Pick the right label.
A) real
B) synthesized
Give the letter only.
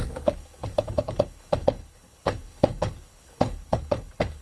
B